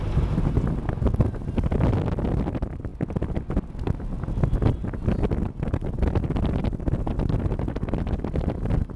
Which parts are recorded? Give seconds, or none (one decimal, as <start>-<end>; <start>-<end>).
0.0-9.0